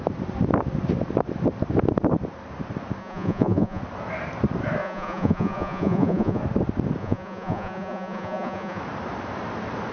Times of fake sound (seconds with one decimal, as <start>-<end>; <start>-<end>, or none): 3.0-3.8; 4.8-6.4; 7.0-8.8

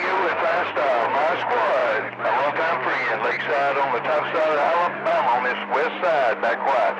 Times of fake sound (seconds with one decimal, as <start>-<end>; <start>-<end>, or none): 0.0-2.9; 4.0-7.0

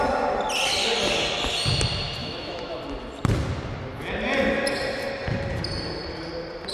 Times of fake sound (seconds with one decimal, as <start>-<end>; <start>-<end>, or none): 2.2-2.8

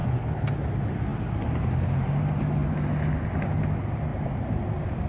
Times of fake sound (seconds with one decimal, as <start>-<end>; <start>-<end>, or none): 4.1-5.1

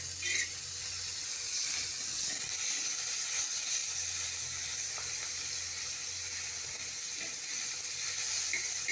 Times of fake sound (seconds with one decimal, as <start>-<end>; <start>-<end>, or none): none

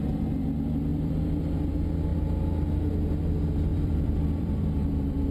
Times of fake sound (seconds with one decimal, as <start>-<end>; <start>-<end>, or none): 0.9-1.4; 3.7-5.3

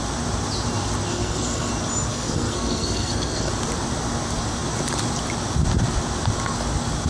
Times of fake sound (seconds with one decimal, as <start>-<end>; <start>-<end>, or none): 1.1-1.7; 2.1-3.5